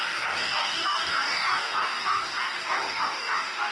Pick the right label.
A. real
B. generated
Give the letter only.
B